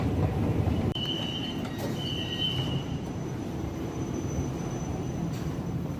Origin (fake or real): fake